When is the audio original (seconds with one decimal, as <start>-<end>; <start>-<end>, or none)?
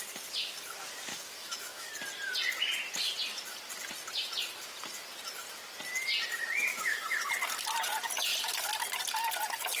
0.0-1.1; 1.9-6.7; 7.3-9.8